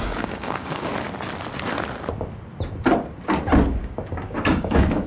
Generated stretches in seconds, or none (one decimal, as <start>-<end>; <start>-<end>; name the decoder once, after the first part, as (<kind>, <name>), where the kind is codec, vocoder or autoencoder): 0.0-0.9 (codec, DAC); 3.7-5.1